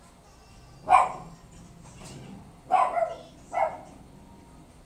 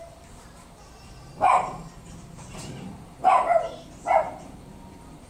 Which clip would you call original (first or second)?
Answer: first